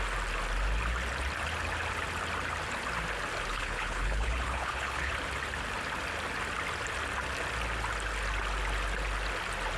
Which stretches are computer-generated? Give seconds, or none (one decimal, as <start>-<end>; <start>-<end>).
3.5-5.1